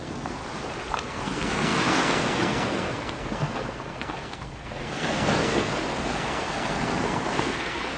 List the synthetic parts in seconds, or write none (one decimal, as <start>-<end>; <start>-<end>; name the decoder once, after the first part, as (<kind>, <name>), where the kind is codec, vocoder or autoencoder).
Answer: 0.0-0.4 (codec, SNAC); 0.9-8.0

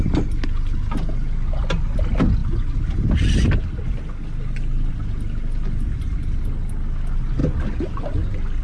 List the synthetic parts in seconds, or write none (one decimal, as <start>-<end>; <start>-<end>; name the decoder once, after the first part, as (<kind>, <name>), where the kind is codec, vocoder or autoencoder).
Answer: none